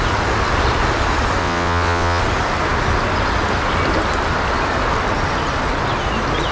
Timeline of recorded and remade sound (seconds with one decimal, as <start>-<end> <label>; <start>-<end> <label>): 0.0-1.4 recorded; 1.4-2.2 remade; 2.2-6.5 recorded